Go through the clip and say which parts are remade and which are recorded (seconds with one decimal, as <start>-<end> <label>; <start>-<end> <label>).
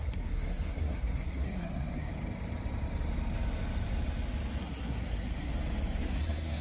0.0-2.1 remade; 2.1-4.6 recorded; 4.6-5.5 remade; 5.5-6.0 recorded; 6.0-6.6 remade